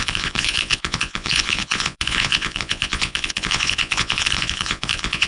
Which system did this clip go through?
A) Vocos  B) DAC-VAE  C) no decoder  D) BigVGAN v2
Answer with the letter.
A